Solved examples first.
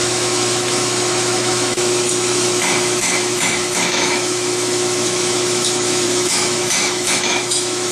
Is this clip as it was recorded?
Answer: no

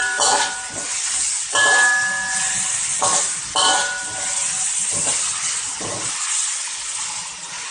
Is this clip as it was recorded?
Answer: yes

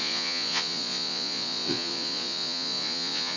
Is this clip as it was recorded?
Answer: no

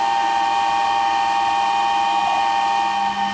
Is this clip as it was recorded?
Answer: yes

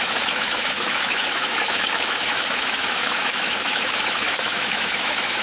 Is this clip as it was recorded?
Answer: no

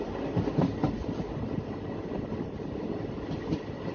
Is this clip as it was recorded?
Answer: yes